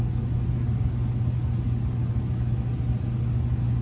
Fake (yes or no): no